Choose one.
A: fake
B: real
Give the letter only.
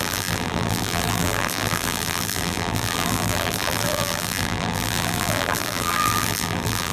A